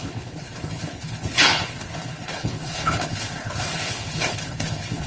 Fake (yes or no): yes